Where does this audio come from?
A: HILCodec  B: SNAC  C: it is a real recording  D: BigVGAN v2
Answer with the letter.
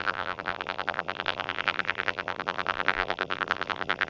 D